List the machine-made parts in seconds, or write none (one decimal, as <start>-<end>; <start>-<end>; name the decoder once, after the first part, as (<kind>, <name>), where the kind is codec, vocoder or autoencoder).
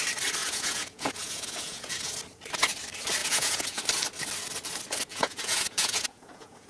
0.4-2.1 (vocoder, Vocos); 3.2-3.8; 5.1-6.7